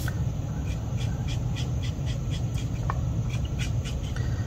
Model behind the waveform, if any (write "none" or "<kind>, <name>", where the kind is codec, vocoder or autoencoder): vocoder, BigVGAN v2